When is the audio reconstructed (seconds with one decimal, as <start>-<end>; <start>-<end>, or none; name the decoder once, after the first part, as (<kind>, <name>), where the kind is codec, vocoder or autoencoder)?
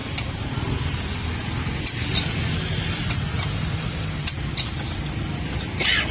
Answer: none